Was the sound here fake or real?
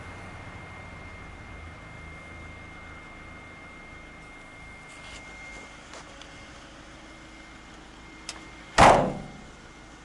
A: real